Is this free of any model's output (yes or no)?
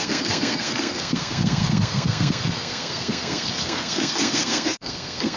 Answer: no